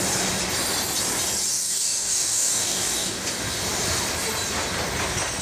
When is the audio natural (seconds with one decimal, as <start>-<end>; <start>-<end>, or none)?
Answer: 0.0-1.5; 3.3-5.4